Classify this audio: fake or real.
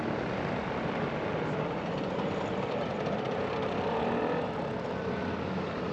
real